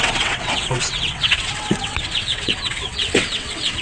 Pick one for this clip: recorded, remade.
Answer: remade